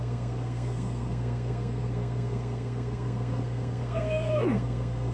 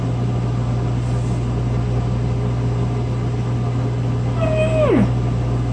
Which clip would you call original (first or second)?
second